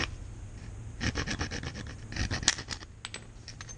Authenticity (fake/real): real